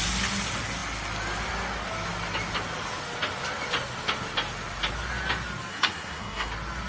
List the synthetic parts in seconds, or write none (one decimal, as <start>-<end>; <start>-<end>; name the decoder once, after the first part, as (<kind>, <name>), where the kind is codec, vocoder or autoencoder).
5.7-6.5 (codec, SNAC)